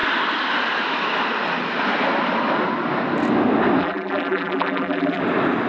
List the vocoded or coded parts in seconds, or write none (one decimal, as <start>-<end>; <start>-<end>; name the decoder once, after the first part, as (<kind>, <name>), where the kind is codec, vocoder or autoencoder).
3.8-5.2 (vocoder, BigVGAN v2)